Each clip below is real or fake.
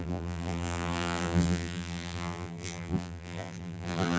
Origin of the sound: fake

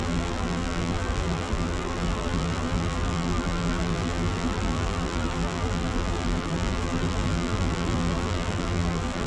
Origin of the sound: fake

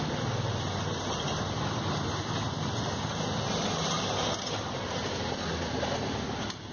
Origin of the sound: real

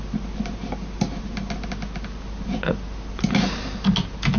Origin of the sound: real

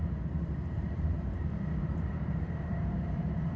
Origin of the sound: fake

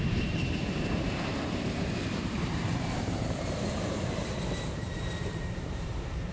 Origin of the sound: fake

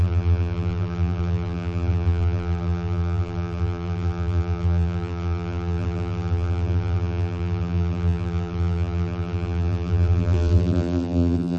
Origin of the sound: fake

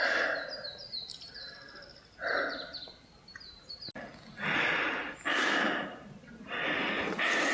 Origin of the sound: real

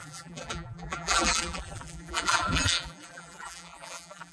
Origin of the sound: fake